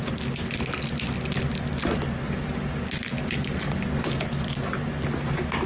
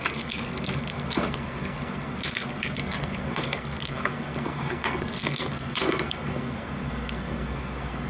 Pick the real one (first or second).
first